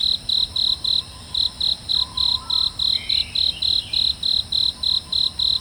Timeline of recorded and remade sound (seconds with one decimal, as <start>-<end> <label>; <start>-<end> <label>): 0.0-1.9 remade; 1.9-5.6 recorded